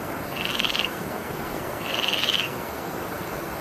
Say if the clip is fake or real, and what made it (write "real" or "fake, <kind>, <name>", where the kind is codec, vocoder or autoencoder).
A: fake, codec, SNAC